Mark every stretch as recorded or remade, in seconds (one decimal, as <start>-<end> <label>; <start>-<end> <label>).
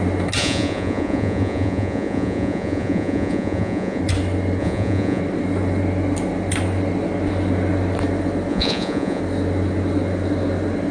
0.0-0.4 recorded; 0.4-4.0 remade; 4.0-4.6 recorded; 4.6-5.2 remade; 5.2-8.5 recorded; 8.5-9.2 remade; 9.2-10.9 recorded